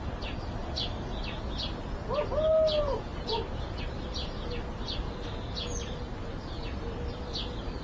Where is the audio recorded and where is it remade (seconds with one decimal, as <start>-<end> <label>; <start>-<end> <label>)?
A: 0.0-7.8 recorded